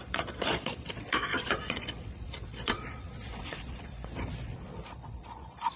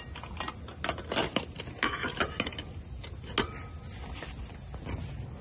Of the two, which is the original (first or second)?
second